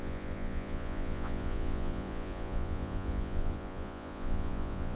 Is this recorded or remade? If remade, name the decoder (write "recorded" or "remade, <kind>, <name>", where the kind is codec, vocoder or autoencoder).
remade, vocoder, Vocos